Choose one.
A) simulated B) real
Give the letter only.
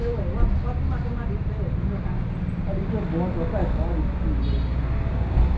B